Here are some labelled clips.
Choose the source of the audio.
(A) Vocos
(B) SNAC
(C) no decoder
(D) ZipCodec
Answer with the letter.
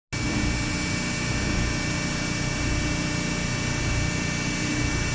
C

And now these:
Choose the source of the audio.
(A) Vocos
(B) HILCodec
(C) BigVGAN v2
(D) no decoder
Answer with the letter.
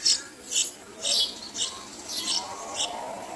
D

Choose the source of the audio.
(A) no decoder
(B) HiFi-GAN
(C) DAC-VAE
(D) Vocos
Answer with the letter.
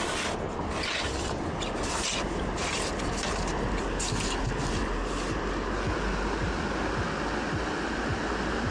A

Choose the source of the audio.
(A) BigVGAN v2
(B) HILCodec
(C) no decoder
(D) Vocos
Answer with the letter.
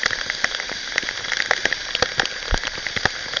C